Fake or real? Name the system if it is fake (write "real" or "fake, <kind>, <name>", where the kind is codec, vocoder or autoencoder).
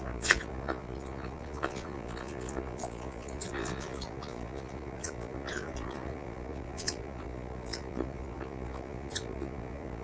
fake, vocoder, Vocos